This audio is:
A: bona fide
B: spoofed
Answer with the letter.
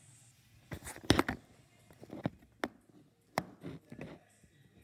A